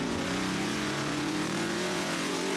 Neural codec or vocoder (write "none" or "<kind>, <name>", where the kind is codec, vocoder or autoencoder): vocoder, Vocos